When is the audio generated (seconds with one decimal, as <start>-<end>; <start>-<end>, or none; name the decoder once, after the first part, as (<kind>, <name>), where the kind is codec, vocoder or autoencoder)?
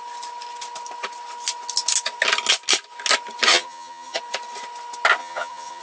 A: 3.5-4.2 (vocoder, HiFi-GAN); 5.2-5.8